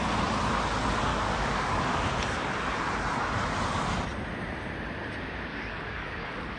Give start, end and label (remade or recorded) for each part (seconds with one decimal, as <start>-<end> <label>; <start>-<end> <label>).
0.0-1.1 recorded; 1.1-2.1 remade; 2.1-5.5 recorded; 5.5-6.6 remade